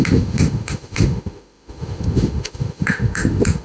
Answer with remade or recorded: remade